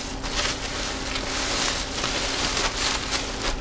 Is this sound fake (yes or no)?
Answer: no